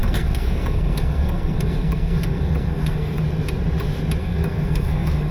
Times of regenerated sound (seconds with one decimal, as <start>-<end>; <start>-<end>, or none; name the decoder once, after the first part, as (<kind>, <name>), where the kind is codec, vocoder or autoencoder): 0.0-3.2 (codec, SNAC); 4.2-5.3